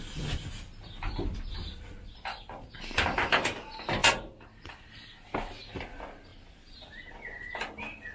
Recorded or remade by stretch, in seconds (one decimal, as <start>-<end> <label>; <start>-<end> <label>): 0.0-8.1 recorded

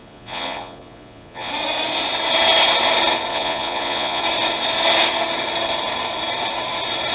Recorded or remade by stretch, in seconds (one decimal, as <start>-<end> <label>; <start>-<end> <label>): 0.0-1.5 remade; 1.5-3.3 recorded; 3.3-4.2 remade; 4.2-7.1 recorded

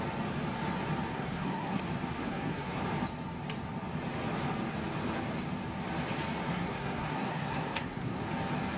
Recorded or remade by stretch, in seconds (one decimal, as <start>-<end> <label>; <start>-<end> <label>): 0.0-1.1 recorded; 1.1-1.8 remade; 1.8-2.2 recorded; 2.2-2.8 remade; 2.8-6.5 recorded; 6.5-8.2 remade; 8.2-8.8 recorded

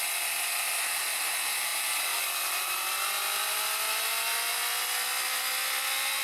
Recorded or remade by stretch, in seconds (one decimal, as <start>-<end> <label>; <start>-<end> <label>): 0.0-6.2 recorded

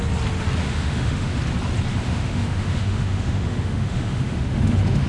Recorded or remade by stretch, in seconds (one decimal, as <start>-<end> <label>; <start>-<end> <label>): 0.0-0.6 recorded; 0.6-1.4 remade; 1.4-1.9 recorded; 1.9-5.1 remade

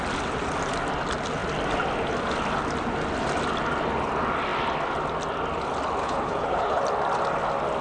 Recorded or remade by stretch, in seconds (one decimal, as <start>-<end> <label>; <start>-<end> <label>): 0.0-6.0 recorded; 6.0-6.8 remade; 6.8-7.8 recorded